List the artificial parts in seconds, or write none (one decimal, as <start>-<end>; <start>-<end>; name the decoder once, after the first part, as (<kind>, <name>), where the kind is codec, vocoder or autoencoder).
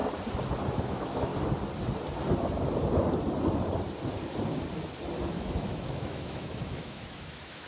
0.8-1.3 (autoencoder, DAC-VAE); 5.3-7.7